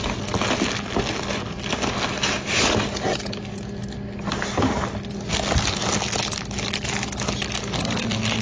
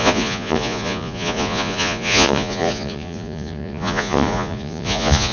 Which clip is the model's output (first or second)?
second